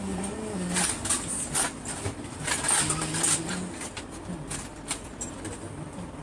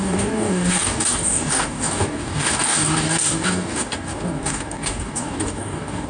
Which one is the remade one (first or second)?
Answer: second